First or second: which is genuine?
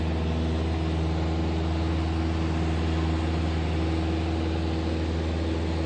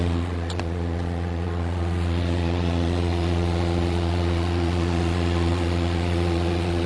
first